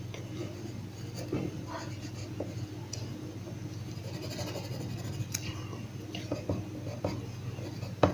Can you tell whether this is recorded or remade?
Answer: recorded